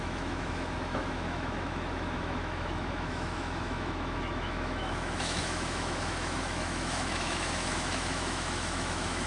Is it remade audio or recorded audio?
remade